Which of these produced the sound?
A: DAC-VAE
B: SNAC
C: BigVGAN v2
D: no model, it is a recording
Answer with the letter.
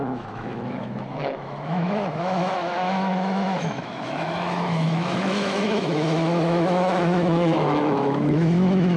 A